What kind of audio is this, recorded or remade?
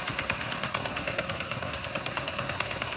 remade